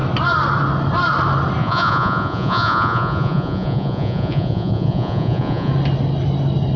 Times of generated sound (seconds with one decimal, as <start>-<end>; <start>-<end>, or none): 1.6-5.7

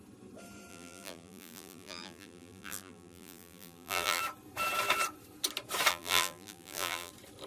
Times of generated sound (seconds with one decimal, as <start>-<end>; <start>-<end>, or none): 0.7-4.2; 5.9-7.1

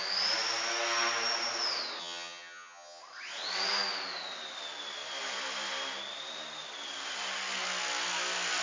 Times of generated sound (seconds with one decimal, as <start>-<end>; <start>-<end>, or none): 2.0-3.0

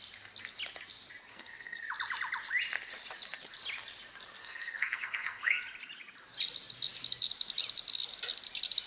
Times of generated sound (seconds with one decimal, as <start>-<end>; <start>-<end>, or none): 1.3-1.8; 4.4-5.6

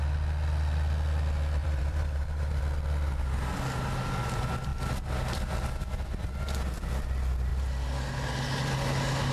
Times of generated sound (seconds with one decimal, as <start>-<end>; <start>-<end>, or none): 1.6-2.6

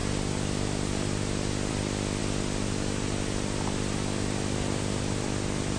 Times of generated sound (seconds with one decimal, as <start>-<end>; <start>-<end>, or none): none